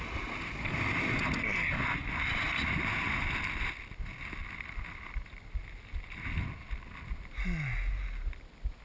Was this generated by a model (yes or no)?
no